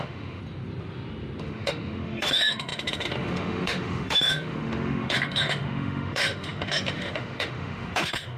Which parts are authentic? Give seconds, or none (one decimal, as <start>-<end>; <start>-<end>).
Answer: 0.4-1.4